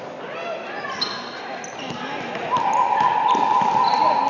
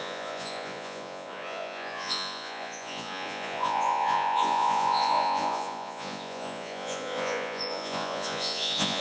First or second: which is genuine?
first